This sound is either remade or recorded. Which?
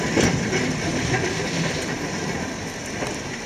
remade